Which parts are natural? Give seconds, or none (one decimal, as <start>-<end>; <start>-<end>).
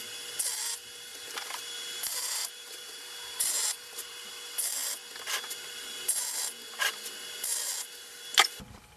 0.0-1.1; 4.3-9.0